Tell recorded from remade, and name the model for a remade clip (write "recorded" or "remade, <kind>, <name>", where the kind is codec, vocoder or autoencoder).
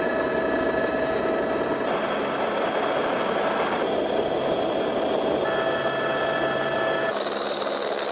recorded